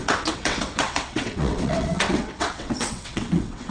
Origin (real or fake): fake